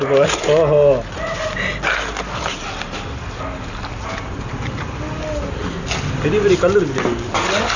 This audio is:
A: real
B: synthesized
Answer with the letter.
A